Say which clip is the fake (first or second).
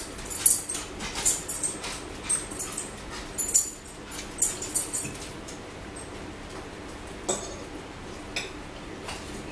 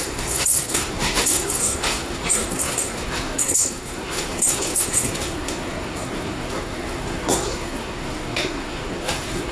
second